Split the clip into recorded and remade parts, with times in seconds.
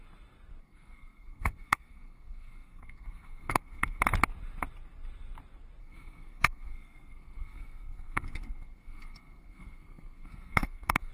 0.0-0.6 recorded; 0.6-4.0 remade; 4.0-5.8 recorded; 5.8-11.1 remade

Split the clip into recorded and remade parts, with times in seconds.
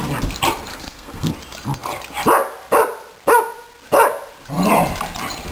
0.0-0.7 recorded; 0.7-1.3 remade; 1.3-5.5 recorded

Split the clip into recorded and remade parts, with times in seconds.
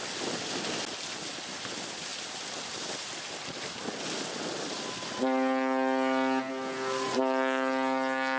0.0-8.4 recorded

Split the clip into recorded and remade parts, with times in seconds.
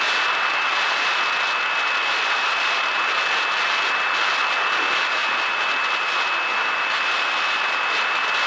0.0-8.5 recorded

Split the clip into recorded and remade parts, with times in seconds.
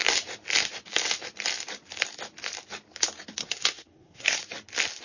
0.0-3.4 recorded; 3.4-4.4 remade; 4.4-5.0 recorded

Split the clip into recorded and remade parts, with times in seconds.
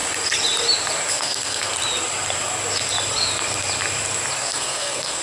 0.0-1.1 recorded; 1.1-1.7 remade; 1.7-4.4 recorded; 4.4-5.2 remade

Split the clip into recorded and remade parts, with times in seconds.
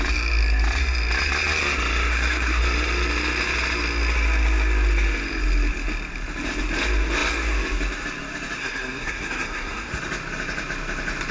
0.0-2.1 recorded; 2.1-2.6 remade; 2.6-8.6 recorded; 8.6-9.9 remade; 9.9-11.3 recorded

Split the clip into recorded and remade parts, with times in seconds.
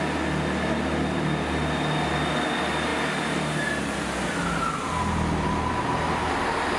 0.0-6.8 recorded